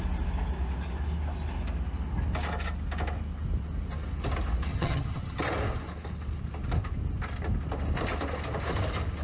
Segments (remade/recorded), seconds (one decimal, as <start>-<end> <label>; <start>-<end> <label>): 0.0-4.7 recorded; 4.7-5.4 remade; 5.4-9.2 recorded